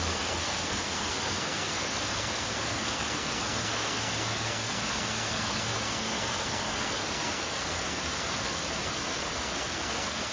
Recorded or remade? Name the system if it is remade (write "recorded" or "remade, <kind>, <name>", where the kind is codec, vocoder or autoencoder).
remade, codec, SNAC